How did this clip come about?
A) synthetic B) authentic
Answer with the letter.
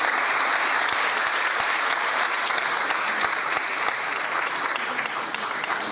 A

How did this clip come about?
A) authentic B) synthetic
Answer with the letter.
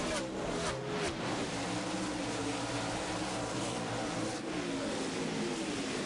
A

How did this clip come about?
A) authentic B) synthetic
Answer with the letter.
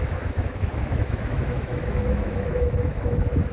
B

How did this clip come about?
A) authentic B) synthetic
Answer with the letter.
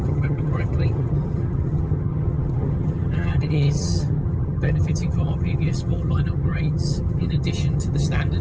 B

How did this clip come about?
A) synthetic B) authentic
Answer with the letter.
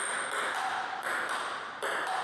B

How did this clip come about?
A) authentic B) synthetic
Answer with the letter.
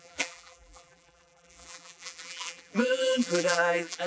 B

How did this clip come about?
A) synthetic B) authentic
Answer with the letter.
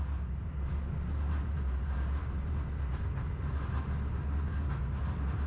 B